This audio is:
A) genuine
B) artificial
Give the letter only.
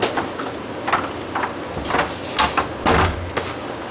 A